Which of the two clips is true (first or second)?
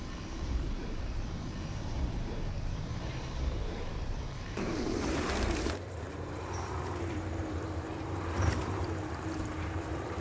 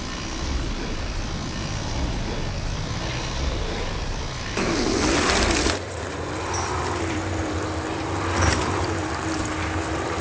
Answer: second